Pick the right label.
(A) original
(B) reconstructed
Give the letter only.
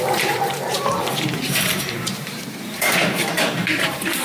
B